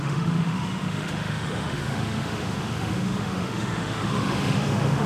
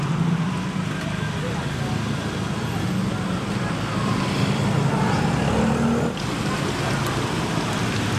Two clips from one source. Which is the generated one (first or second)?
first